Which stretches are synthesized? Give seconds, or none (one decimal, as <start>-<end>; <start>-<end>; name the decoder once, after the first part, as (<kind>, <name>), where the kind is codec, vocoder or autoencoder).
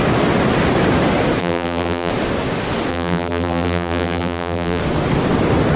1.4-2.1 (vocoder, BigVGAN v2); 2.9-4.8